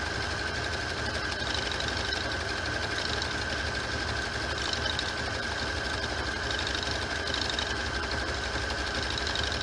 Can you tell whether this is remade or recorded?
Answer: recorded